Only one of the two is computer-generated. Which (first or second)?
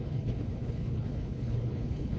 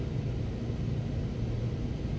first